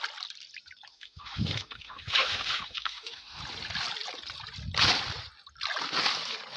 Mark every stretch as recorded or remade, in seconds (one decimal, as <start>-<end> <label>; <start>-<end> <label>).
0.0-0.9 recorded; 0.9-3.4 remade; 3.4-6.6 recorded